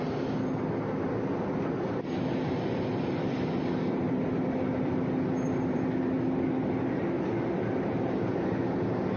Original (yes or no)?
yes